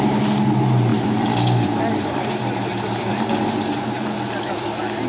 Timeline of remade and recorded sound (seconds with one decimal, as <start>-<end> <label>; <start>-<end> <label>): 0.0-0.9 recorded; 0.9-3.8 remade; 3.8-5.1 recorded